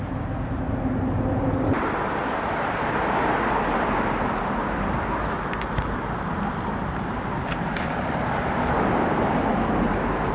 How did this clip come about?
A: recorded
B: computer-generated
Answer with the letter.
B